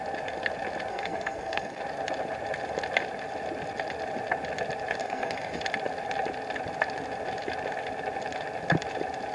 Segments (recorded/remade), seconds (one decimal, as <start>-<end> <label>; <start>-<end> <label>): 0.0-0.9 recorded; 0.9-1.8 remade; 1.8-5.0 recorded; 5.0-5.6 remade; 5.6-9.3 recorded